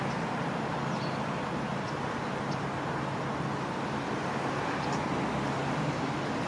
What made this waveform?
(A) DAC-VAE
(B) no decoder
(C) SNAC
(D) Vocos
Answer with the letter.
B